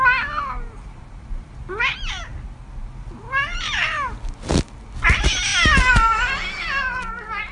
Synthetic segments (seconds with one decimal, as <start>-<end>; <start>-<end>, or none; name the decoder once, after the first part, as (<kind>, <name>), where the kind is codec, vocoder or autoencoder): none